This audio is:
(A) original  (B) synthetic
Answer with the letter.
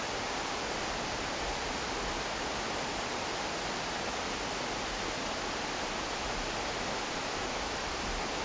A